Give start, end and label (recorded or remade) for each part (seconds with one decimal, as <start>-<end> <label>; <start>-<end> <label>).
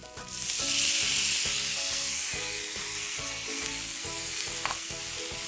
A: 0.0-1.7 recorded; 1.7-5.0 remade; 5.0-5.5 recorded